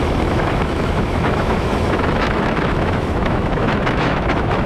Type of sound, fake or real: fake